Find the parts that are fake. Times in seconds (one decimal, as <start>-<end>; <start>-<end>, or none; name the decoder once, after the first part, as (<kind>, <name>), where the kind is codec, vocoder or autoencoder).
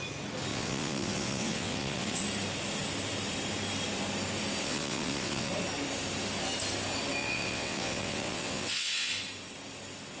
0.5-2.2 (vocoder, WaveNeXt); 4.6-5.5; 7.2-9.1